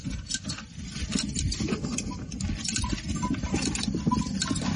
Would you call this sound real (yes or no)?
yes